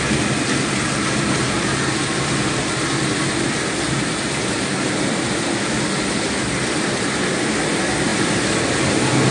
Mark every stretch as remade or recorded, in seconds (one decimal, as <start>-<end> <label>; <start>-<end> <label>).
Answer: 0.0-9.3 recorded